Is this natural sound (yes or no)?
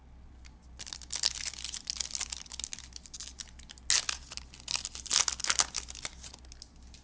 yes